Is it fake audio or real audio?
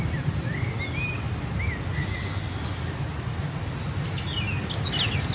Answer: real